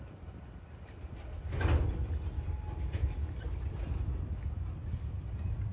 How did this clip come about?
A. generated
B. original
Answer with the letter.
B